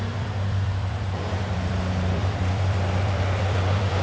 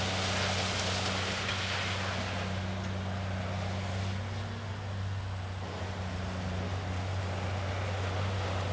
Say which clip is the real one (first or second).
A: second